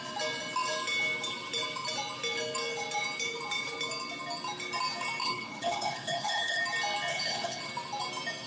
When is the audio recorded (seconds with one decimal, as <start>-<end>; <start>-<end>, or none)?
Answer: 0.0-5.2; 6.6-7.1; 7.7-8.5